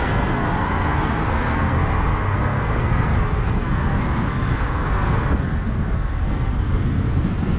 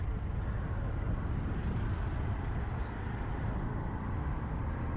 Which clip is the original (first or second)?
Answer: second